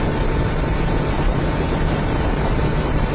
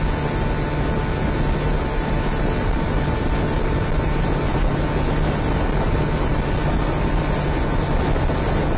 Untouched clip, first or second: second